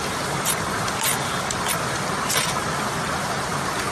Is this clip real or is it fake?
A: real